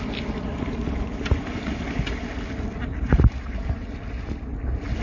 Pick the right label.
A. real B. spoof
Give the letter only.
A